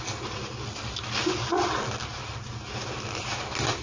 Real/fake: real